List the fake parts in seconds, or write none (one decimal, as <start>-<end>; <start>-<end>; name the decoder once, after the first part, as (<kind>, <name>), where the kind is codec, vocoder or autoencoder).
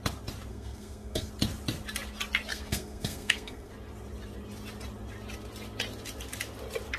0.5-1.3 (codec, SNAC); 2.5-3.7